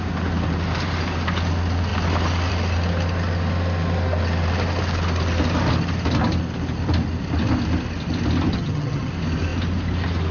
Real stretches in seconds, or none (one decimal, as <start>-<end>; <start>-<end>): 0.0-8.5; 9.1-10.3